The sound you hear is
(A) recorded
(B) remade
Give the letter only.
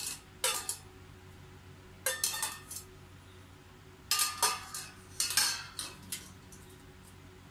A